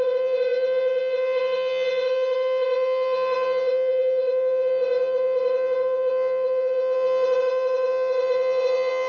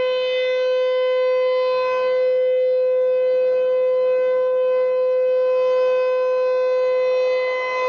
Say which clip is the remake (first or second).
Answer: first